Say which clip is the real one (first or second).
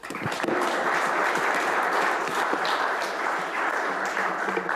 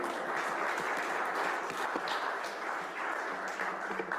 second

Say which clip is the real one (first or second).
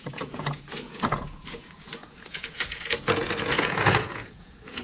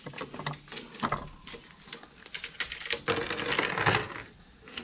second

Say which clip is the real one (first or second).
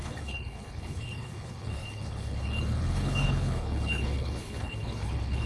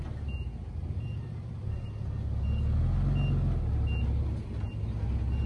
second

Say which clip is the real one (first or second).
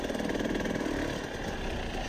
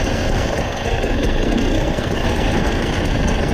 first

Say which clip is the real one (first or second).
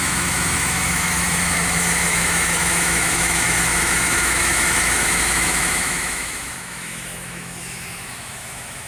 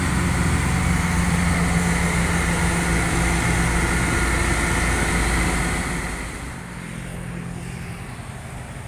second